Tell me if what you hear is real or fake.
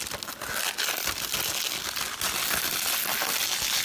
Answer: real